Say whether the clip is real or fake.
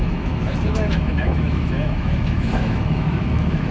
fake